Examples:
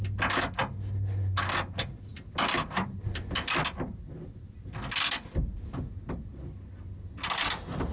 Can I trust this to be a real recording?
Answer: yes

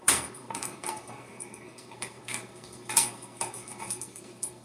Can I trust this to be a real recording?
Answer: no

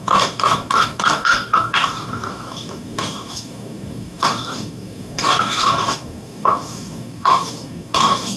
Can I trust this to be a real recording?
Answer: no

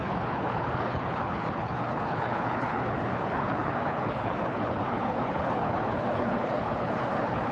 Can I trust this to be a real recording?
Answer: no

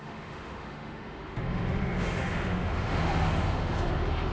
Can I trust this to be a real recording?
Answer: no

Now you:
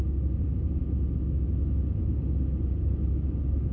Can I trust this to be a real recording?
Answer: yes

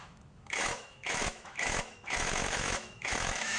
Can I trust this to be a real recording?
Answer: no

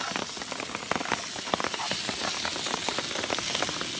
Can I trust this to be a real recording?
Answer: yes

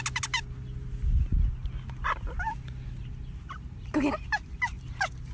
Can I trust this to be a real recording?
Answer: yes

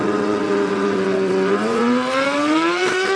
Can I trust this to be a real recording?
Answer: no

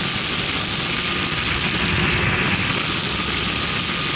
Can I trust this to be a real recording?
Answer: yes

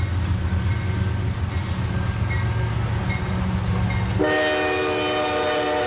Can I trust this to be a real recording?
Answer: yes